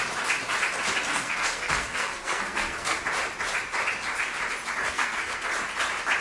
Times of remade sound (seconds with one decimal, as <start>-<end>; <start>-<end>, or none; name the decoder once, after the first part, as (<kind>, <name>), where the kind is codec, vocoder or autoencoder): 1.1-3.0 (codec, SNAC); 4.8-5.5